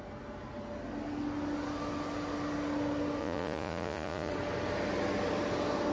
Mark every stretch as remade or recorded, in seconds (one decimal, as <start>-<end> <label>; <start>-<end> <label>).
0.0-3.2 recorded; 3.2-4.3 remade; 4.3-5.9 recorded